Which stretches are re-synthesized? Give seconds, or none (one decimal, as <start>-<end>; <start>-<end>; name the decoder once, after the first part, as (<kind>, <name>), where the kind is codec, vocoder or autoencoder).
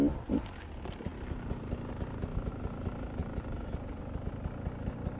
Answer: none